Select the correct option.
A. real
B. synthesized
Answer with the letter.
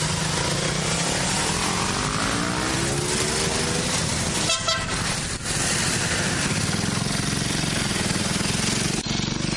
A